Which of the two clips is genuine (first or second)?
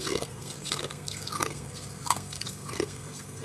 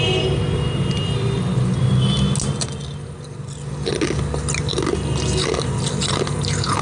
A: second